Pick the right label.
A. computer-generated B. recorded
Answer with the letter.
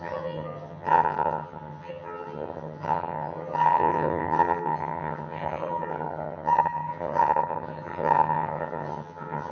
A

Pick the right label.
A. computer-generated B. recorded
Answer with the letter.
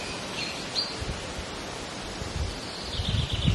B